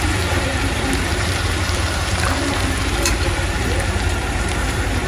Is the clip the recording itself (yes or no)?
no